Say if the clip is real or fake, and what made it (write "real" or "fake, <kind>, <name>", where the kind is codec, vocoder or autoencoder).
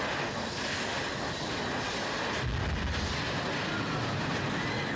real